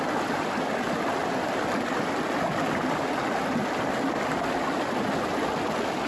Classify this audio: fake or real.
real